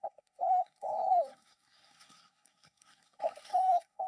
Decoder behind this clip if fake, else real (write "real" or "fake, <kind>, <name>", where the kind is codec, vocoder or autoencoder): fake, codec, SNAC